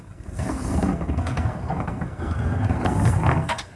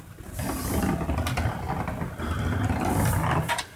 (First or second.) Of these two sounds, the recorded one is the second